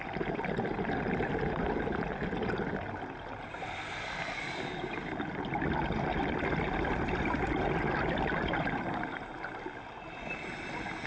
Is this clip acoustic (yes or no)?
yes